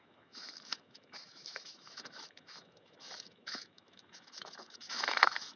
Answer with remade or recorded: remade